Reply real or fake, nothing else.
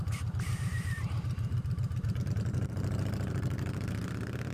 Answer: fake